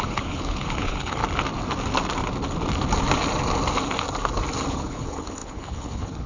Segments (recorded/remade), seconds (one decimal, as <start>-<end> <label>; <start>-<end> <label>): 0.0-1.2 remade; 1.2-4.7 recorded; 4.7-6.3 remade